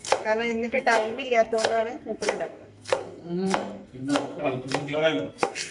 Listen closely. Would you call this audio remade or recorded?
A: remade